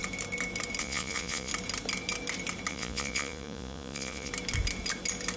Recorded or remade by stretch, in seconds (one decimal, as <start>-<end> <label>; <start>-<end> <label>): 0.0-0.8 recorded; 0.8-1.5 remade; 1.5-2.7 recorded; 2.7-4.3 remade; 4.3-5.4 recorded